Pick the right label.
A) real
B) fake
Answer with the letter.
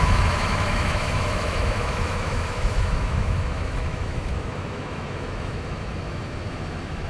B